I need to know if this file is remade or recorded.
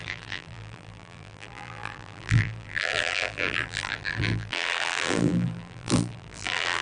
remade